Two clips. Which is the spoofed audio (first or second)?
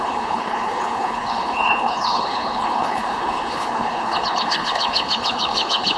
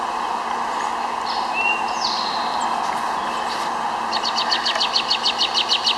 first